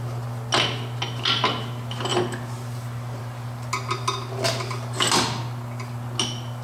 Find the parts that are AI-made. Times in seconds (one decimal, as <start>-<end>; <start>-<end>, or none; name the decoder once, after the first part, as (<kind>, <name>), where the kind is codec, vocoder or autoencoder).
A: none